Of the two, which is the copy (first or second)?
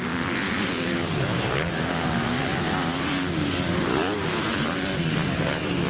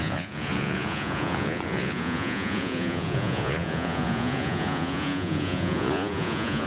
second